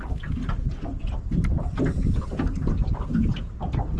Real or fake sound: real